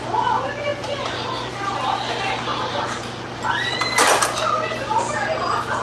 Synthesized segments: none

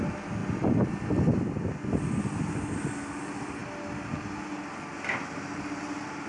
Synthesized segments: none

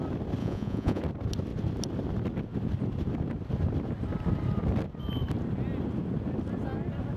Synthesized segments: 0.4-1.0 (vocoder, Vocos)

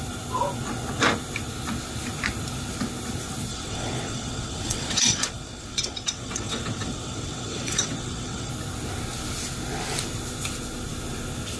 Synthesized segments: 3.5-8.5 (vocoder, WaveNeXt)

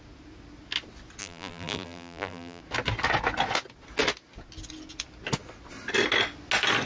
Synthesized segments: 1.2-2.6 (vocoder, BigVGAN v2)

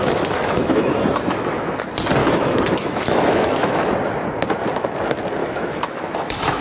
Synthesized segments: 0.0-1.8 (autoencoder, DAC-VAE); 2.2-3.9; 5.4-6.6